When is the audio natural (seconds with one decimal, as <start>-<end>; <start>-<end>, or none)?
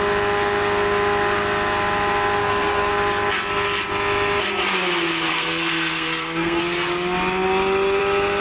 0.0-2.4; 2.9-5.3; 6.6-8.4